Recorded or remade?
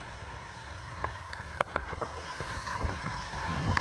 remade